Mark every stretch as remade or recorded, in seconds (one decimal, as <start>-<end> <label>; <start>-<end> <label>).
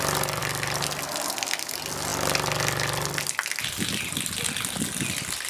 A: 0.0-5.5 recorded